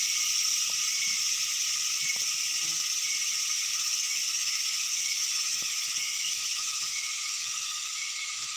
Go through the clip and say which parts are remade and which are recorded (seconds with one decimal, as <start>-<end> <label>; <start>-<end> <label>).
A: 0.0-3.7 recorded; 3.7-8.6 remade